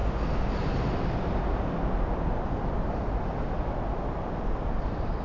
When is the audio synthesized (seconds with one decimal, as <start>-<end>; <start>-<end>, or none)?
none

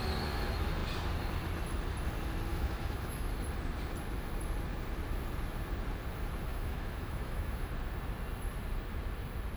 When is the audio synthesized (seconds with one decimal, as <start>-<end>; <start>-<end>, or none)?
2.5-3.3; 6.5-7.7

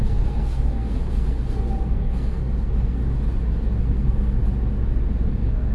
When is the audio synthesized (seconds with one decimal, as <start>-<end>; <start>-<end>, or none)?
0.0-3.0; 3.8-4.4; 5.3-5.7

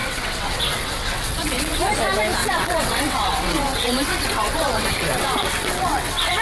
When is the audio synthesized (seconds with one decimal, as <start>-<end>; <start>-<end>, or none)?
0.0-1.9; 2.4-6.4

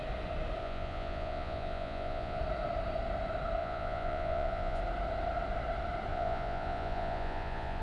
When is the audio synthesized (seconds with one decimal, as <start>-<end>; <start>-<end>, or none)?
0.6-2.4; 3.6-4.8; 6.1-7.8

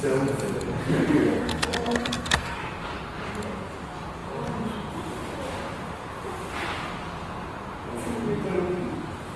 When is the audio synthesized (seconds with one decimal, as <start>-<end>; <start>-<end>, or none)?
1.4-2.6

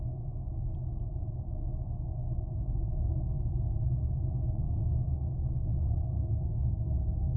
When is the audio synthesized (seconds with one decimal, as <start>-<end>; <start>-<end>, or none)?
none